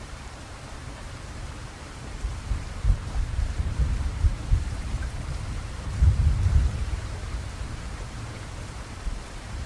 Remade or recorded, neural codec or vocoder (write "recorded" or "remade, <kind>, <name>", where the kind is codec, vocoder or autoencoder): remade, vocoder, BigVGAN v2